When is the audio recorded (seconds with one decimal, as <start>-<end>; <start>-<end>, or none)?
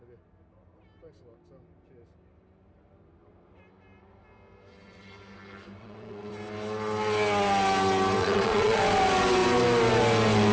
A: 0.0-5.8; 6.3-8.2; 8.8-10.5